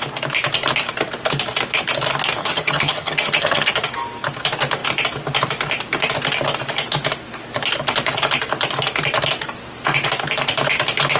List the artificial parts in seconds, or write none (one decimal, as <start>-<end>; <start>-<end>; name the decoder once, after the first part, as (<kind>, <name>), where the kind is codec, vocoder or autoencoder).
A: 2.4-3.7 (vocoder, HiFi-GAN)